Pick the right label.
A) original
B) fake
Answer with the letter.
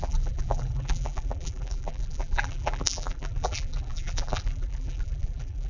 B